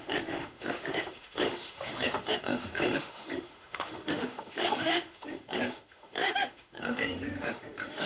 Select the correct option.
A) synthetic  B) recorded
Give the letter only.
A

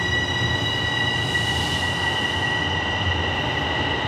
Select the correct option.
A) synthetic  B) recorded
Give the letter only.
B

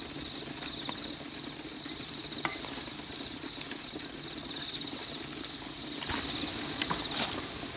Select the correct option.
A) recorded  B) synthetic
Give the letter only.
A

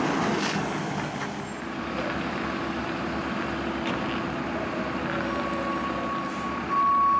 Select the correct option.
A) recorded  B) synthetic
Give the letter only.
A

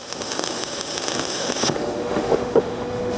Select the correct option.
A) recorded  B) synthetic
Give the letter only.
B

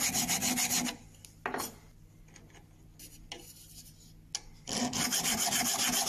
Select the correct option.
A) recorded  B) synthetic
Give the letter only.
A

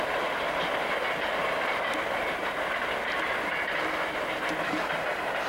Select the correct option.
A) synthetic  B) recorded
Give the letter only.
B